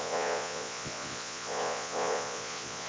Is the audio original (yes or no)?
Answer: no